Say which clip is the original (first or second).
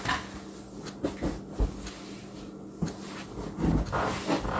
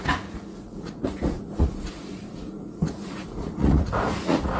first